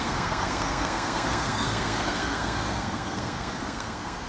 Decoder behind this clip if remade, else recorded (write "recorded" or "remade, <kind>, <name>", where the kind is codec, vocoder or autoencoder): remade, codec, SNAC